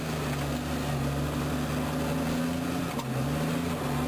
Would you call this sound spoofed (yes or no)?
no